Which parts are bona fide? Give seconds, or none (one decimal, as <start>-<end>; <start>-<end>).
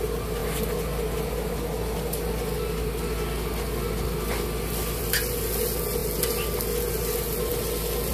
0.0-8.1